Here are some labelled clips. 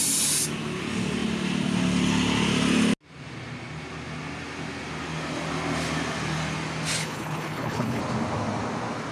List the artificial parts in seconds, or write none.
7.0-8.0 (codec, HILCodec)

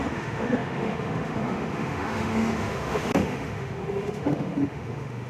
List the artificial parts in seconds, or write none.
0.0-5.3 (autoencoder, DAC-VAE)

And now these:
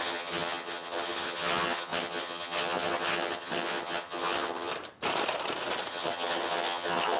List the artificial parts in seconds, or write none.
0.0-4.7 (vocoder, HiFi-GAN); 5.9-7.2